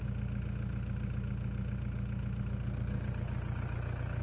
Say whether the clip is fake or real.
real